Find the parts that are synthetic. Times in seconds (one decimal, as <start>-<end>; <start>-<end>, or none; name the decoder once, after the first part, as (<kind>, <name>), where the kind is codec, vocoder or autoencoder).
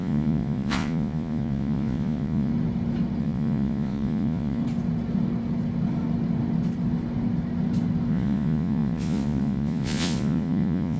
0.0-2.5 (vocoder, Vocos); 3.2-4.6; 8.1-11.0